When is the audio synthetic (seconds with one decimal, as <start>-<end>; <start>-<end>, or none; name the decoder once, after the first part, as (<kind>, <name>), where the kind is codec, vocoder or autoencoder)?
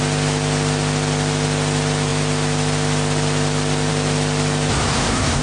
4.7-5.4 (codec, SNAC)